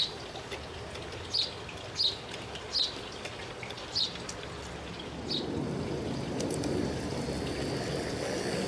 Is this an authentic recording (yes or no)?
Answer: yes